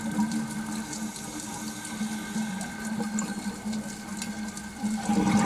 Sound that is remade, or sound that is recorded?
recorded